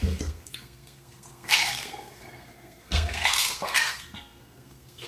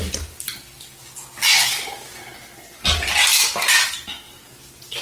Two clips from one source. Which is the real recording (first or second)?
second